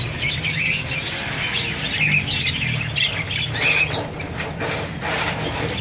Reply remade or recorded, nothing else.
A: recorded